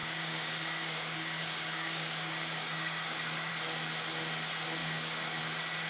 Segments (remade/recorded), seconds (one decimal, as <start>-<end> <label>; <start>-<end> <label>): 0.0-3.5 remade; 3.5-4.8 recorded; 4.8-5.4 remade; 5.4-5.9 recorded